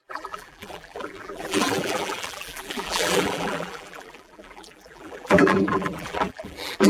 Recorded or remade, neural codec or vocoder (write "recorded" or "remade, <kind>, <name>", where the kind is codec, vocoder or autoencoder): remade, vocoder, BigVGAN v2